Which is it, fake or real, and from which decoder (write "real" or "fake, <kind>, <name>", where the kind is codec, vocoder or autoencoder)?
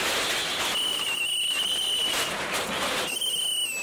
real